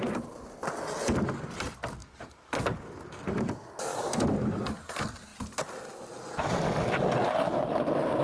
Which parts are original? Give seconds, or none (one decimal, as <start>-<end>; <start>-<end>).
0.0-2.0; 3.2-3.9; 4.4-8.2